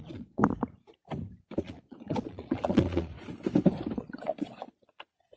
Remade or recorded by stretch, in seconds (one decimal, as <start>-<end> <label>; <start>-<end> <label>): 0.0-0.4 remade; 0.4-1.6 recorded; 1.6-3.1 remade; 3.1-4.0 recorded; 4.0-5.4 remade